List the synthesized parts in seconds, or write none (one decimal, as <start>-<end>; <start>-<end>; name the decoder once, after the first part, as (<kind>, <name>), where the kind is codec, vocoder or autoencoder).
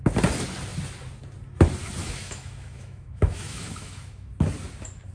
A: 2.0-4.3 (autoencoder, DAC-VAE)